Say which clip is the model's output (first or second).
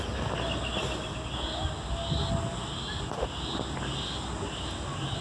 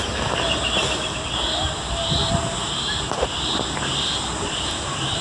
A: second